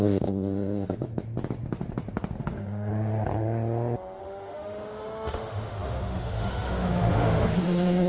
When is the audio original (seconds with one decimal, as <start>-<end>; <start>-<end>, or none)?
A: 1.1-2.4; 2.9-4.2